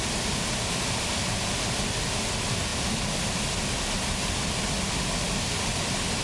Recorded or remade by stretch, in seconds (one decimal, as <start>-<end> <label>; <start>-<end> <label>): 0.0-6.2 recorded